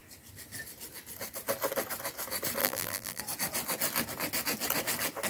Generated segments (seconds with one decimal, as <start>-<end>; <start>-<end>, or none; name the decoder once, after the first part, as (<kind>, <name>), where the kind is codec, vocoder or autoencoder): 2.6-3.2 (vocoder, BigVGAN v2)